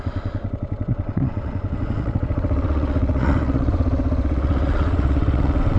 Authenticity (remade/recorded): remade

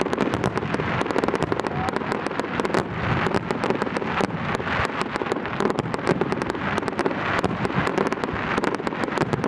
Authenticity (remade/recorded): recorded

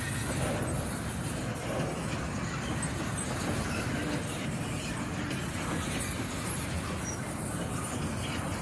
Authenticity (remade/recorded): recorded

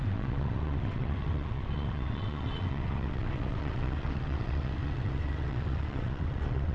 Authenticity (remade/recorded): remade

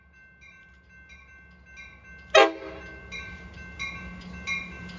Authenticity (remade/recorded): recorded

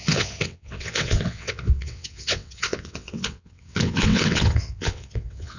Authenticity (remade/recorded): remade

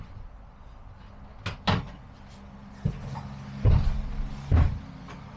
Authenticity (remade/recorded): recorded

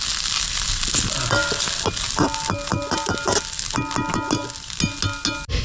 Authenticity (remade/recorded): recorded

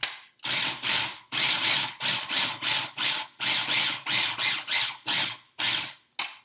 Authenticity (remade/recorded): recorded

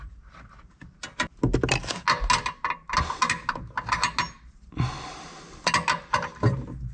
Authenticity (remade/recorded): recorded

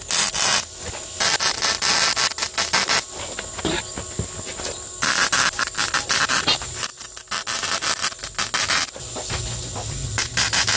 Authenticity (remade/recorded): recorded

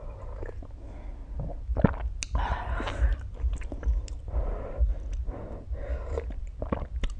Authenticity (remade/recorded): recorded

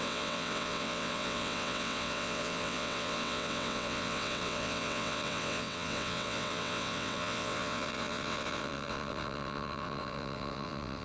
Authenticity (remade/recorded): remade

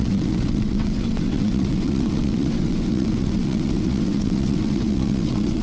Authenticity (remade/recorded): remade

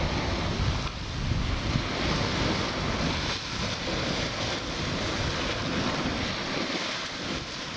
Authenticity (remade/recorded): recorded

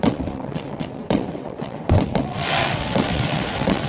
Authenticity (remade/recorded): remade